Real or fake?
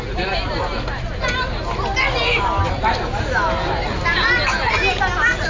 real